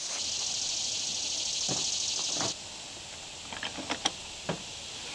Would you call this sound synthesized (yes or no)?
no